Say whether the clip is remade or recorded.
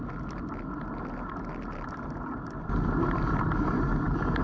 recorded